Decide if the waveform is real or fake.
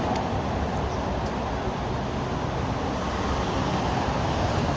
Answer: real